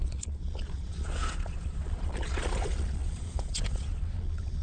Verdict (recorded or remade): remade